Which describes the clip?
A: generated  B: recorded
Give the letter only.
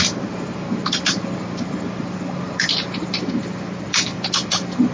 B